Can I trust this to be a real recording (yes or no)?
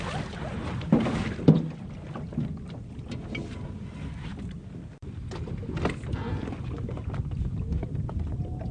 yes